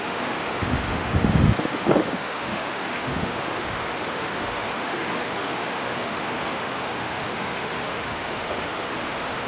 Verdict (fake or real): fake